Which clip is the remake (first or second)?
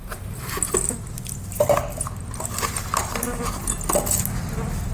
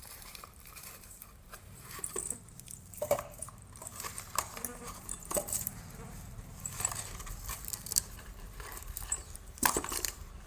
second